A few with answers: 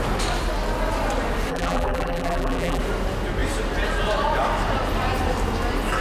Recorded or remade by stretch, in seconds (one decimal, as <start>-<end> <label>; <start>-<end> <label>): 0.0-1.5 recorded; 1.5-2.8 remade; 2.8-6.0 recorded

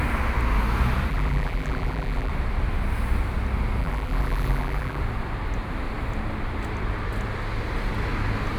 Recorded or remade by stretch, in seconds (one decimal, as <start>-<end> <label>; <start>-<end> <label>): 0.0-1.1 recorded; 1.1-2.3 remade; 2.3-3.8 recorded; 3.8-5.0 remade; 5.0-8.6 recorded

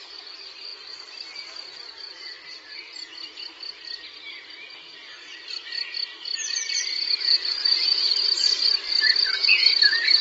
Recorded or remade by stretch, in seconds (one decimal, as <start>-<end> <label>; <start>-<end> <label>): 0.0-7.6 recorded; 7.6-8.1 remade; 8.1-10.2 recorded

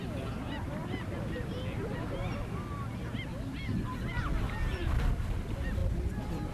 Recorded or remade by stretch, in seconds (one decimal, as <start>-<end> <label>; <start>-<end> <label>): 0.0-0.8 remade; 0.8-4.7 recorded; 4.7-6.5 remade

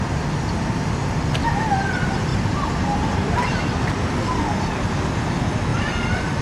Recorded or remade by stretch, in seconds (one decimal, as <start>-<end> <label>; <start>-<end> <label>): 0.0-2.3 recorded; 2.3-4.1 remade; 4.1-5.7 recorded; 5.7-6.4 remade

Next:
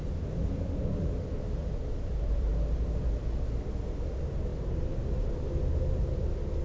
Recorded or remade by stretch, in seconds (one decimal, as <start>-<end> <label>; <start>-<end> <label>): 0.0-2.5 remade; 2.5-4.5 recorded; 4.5-5.8 remade; 5.8-6.6 recorded

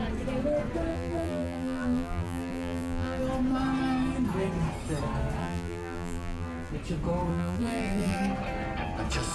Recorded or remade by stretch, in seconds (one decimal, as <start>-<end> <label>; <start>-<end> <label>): 0.0-0.9 recorded; 0.9-3.2 remade; 3.2-5.4 recorded; 5.4-6.7 remade; 6.7-7.3 recorded; 7.3-8.2 remade; 8.2-9.3 recorded